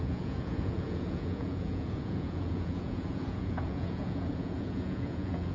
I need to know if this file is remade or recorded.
remade